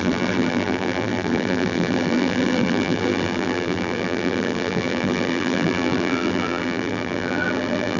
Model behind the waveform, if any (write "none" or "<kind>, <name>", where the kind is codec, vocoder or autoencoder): vocoder, BigVGAN v2